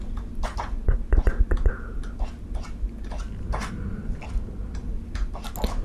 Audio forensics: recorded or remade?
recorded